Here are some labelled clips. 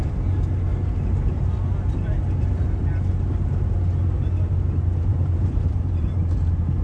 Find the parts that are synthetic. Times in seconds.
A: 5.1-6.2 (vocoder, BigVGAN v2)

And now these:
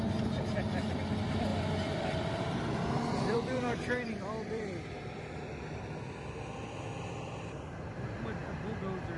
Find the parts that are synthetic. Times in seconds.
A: 1.5-6.0 (vocoder, BigVGAN v2)

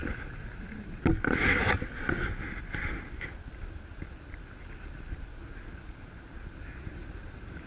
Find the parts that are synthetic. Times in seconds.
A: 2.2-7.7 (vocoder, BigVGAN v2)

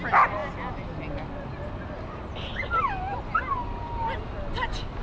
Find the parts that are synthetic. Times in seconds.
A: none